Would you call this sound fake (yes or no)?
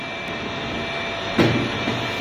no